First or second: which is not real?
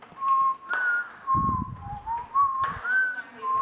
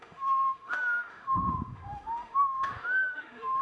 second